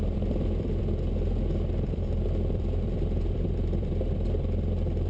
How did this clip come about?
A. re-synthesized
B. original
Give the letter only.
A